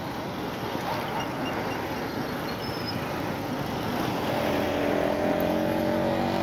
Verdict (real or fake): real